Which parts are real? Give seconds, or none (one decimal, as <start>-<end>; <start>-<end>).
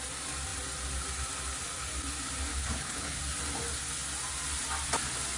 0.0-2.5; 3.2-5.4